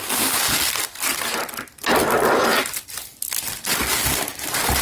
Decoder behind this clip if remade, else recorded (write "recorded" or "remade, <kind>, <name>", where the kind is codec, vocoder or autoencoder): recorded